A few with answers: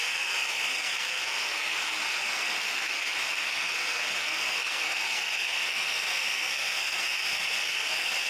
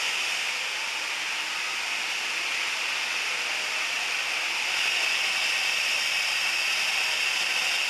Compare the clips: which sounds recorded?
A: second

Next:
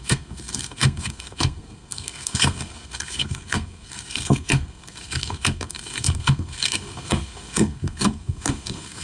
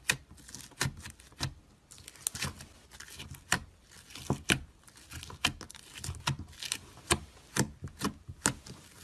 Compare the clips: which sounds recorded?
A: second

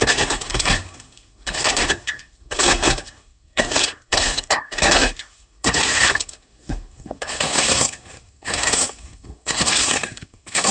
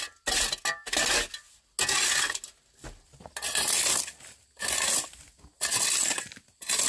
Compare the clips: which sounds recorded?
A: second